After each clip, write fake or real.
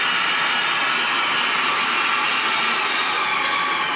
real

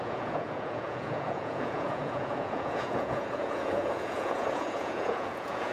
fake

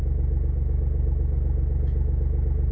real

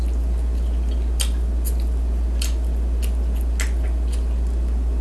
real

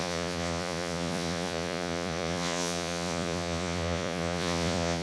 fake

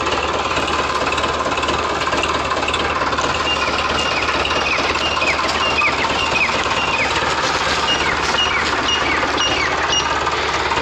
real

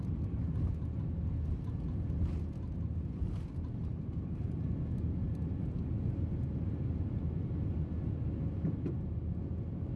real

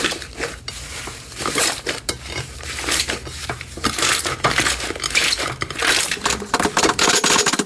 fake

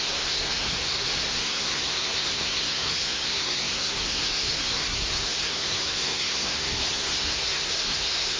fake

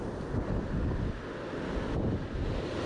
real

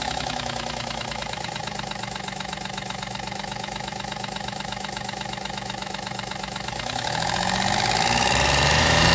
fake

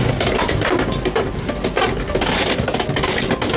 real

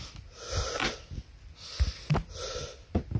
real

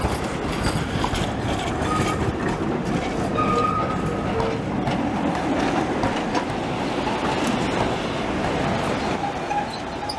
real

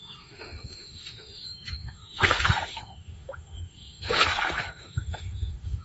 fake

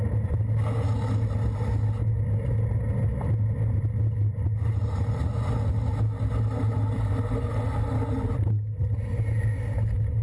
real